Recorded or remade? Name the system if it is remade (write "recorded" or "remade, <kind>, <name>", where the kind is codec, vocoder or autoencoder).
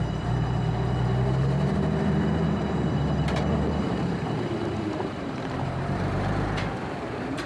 remade, vocoder, BigVGAN v2